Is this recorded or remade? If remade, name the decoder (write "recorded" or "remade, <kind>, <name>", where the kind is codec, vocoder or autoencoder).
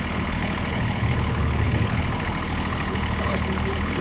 remade, codec, HILCodec